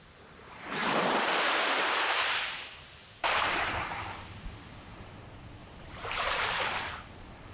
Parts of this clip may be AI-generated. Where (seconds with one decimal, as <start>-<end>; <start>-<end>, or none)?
0.8-5.1; 5.6-6.2